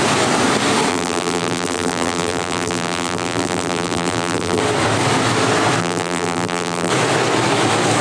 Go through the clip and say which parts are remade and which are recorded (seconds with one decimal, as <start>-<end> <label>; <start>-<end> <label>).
0.0-0.9 recorded; 0.9-4.6 remade; 4.6-5.8 recorded; 5.8-6.9 remade; 6.9-8.0 recorded